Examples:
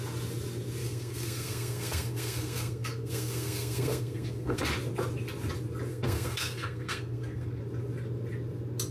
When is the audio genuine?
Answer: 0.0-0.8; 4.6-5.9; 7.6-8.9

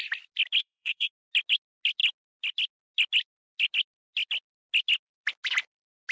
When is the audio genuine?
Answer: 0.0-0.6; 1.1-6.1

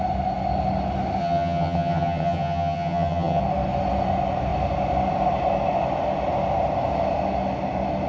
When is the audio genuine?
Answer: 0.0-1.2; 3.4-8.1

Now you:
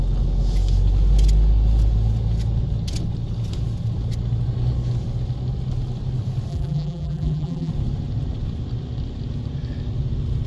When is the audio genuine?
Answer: 0.0-6.5; 7.7-10.5